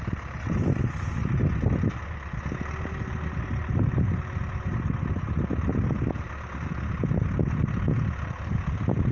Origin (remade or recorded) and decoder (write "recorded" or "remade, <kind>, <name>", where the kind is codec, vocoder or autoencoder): recorded